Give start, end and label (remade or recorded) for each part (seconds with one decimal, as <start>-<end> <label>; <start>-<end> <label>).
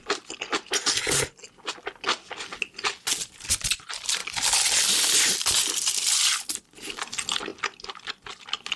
0.0-4.2 recorded; 4.2-6.9 remade; 6.9-7.5 recorded; 7.5-8.1 remade; 8.1-8.8 recorded